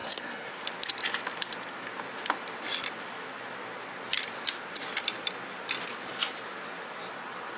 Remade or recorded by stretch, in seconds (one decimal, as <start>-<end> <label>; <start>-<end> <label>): 0.0-0.5 remade; 0.5-7.6 recorded